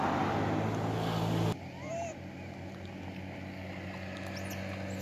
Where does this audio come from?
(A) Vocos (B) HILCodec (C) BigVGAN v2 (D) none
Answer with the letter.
D